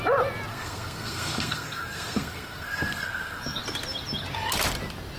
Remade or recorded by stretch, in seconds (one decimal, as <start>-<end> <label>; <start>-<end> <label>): 0.0-0.5 recorded; 0.5-3.6 remade; 3.6-5.2 recorded